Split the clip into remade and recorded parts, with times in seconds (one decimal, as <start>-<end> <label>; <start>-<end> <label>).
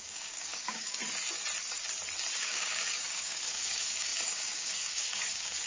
0.0-1.0 remade; 1.0-2.4 recorded; 2.4-5.7 remade